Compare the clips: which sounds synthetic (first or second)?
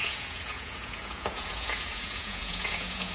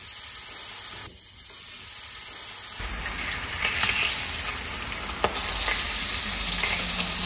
first